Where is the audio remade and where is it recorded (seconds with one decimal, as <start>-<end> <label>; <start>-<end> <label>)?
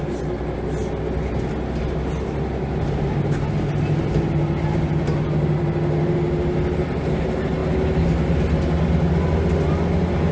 0.0-10.3 recorded